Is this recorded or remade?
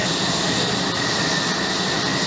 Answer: recorded